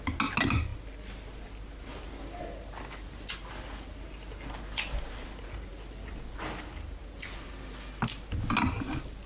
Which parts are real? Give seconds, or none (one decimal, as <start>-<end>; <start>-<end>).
0.0-9.3